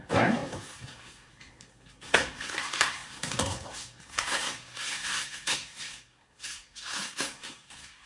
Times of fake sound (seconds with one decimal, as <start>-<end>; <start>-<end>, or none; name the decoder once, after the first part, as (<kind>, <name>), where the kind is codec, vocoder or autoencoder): 0.0-8.1 (codec, SNAC)